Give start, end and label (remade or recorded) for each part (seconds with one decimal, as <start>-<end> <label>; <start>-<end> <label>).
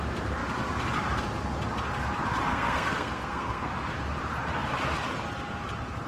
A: 0.0-2.5 recorded; 2.5-3.7 remade; 3.7-6.1 recorded